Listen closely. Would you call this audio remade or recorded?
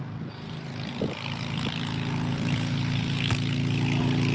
recorded